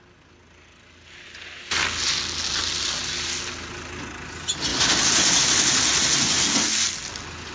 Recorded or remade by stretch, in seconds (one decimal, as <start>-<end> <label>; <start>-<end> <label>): 0.0-7.5 recorded